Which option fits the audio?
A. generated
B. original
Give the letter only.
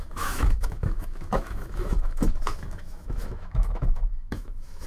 A